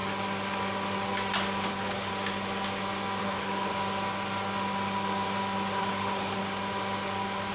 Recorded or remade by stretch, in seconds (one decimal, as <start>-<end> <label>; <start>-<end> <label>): 0.0-1.7 recorded; 1.7-2.1 remade; 2.1-3.2 recorded; 3.2-3.7 remade; 3.7-5.8 recorded; 5.8-6.4 remade; 6.4-7.5 recorded

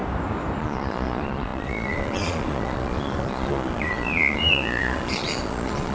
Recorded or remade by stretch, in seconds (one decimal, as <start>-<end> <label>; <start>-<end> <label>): 0.0-0.6 recorded; 0.6-5.9 remade